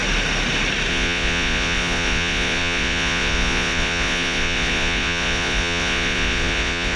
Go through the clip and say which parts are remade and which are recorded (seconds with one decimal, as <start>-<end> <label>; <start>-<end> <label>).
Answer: 0.0-0.9 recorded; 0.9-7.0 remade